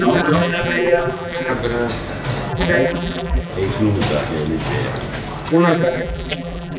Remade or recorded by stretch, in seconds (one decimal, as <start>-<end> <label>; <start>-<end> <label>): 0.0-1.5 remade; 1.5-2.5 recorded; 2.5-3.5 remade; 3.5-5.5 recorded; 5.5-6.8 remade